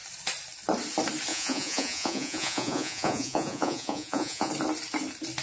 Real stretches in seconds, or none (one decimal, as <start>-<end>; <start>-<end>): 0.0-1.3; 4.5-5.4